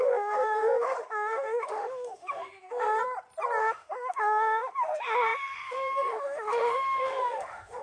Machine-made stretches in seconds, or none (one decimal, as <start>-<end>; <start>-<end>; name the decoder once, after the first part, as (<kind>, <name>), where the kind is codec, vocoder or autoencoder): 0.0-3.0 (autoencoder, DAC-VAE); 3.6-7.8